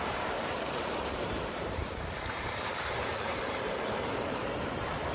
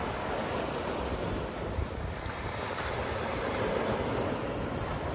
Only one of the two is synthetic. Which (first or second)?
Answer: first